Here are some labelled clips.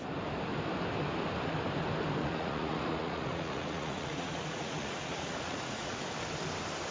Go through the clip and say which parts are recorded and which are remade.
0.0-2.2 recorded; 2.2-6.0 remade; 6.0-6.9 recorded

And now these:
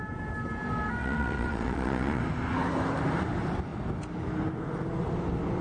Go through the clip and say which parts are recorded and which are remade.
0.0-1.0 recorded; 1.0-2.2 remade; 2.2-5.6 recorded

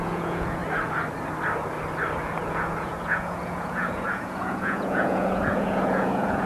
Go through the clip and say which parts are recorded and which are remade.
0.0-0.6 remade; 0.6-2.4 recorded; 2.4-6.5 remade